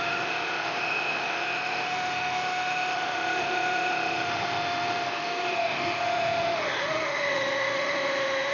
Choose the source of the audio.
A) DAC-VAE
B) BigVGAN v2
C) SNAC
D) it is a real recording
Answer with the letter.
A